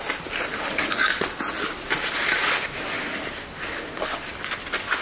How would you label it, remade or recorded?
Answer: recorded